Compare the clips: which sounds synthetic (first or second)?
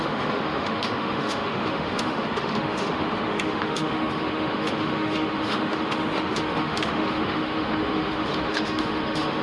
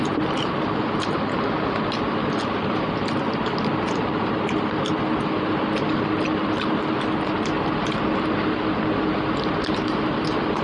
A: first